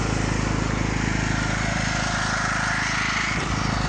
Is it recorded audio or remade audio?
recorded